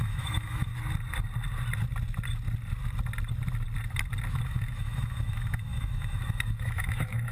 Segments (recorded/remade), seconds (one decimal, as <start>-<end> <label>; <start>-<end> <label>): 0.0-0.7 remade; 0.7-4.3 recorded; 4.3-7.3 remade